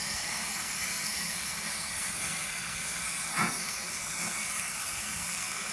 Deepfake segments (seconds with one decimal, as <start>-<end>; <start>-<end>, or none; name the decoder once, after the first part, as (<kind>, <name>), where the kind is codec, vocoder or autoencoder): 0.0-5.7 (codec, SNAC)